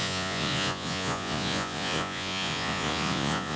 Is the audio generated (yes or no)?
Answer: yes